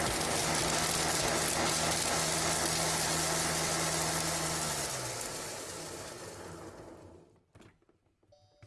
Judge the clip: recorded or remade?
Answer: recorded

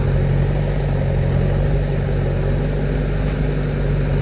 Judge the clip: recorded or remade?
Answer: recorded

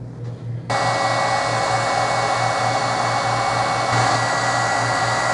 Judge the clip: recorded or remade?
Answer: recorded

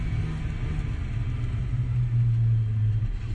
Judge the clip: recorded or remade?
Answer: recorded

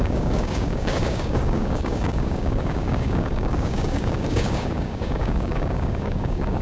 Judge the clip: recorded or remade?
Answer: remade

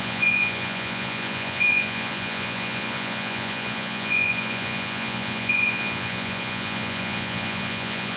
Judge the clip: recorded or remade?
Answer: remade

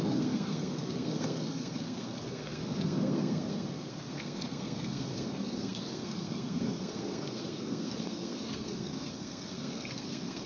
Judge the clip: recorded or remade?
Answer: remade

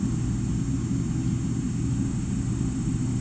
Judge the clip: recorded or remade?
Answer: recorded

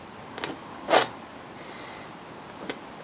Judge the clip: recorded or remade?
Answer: recorded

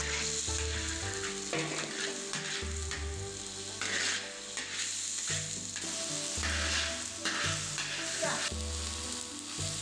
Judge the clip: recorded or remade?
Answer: recorded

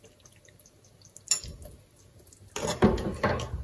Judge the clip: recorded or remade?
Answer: recorded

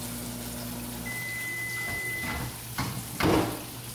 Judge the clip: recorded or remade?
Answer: recorded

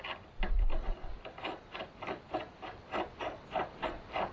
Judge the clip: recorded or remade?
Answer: recorded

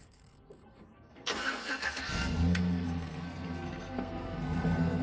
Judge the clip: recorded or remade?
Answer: remade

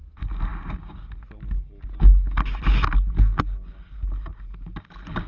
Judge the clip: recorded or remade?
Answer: recorded